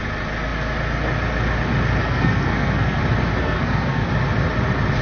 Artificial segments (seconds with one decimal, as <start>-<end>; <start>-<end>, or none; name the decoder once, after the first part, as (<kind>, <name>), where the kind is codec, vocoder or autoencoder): 2.0-3.0 (codec, SNAC); 3.4-4.1